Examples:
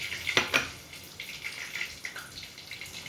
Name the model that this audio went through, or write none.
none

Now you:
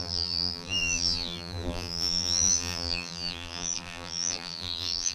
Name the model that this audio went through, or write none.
vocoder, BigVGAN v2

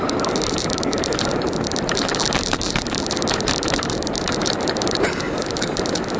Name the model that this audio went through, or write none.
vocoder, BigVGAN v2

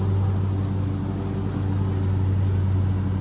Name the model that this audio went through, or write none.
none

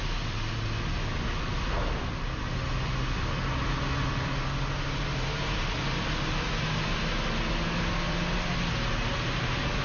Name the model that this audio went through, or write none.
none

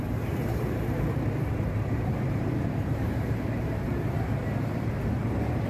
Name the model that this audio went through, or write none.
vocoder, BigVGAN v2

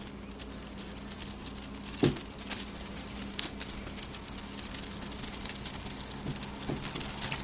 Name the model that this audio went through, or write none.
none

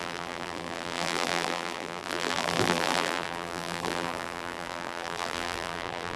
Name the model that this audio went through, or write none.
vocoder, BigVGAN v2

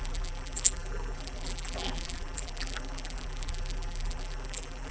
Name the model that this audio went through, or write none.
vocoder, BigVGAN v2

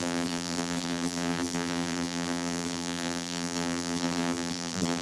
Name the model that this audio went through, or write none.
vocoder, BigVGAN v2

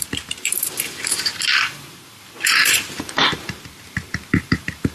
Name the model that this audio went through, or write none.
vocoder, BigVGAN v2